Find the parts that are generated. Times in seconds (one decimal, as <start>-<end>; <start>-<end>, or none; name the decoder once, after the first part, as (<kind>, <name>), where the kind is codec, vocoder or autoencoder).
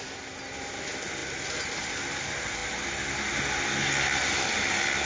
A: none